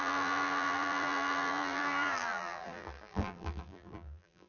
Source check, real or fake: fake